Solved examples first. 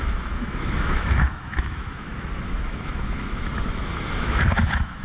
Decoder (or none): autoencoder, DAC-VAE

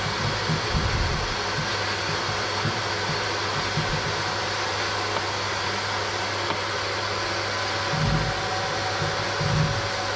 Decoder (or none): none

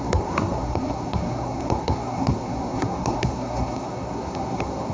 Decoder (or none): codec, SNAC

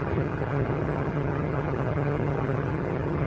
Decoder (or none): vocoder, HiFi-GAN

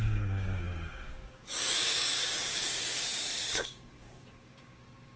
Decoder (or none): codec, DAC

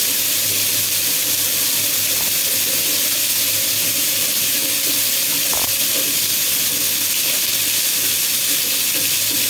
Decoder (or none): none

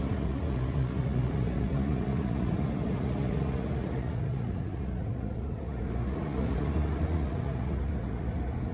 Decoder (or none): vocoder, Vocos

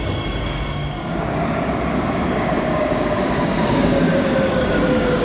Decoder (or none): codec, DAC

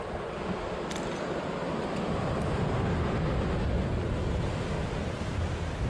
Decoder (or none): none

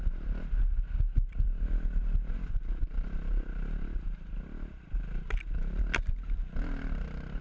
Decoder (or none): none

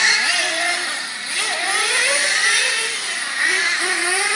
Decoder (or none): vocoder, BigVGAN v2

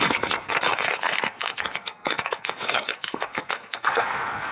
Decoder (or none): codec, SNAC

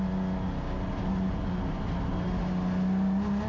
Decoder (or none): none